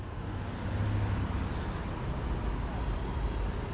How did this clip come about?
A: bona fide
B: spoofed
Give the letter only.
A